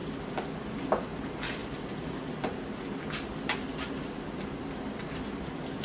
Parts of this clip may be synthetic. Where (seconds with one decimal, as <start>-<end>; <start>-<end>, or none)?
none